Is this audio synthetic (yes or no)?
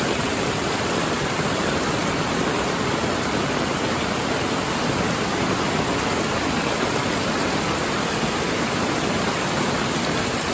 yes